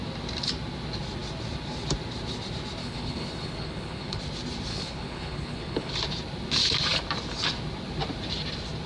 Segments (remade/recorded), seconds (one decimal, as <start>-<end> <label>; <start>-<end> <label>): 0.0-2.8 recorded; 2.8-4.2 remade; 4.2-4.7 recorded; 4.7-5.9 remade; 5.9-8.9 recorded